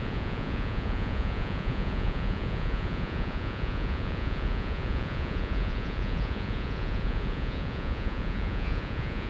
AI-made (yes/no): yes